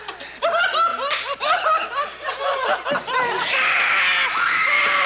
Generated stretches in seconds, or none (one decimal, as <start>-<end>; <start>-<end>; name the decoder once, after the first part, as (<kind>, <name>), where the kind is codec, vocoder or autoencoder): 0.9-4.0 (vocoder, BigVGAN v2)